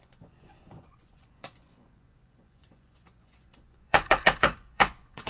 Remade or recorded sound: remade